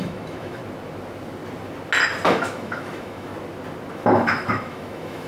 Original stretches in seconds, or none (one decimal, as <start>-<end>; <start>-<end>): 0.6-2.3; 3.3-3.9